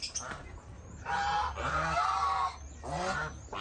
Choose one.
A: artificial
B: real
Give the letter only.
B